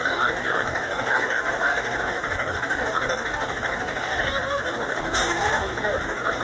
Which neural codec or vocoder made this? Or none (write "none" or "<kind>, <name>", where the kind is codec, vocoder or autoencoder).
codec, DAC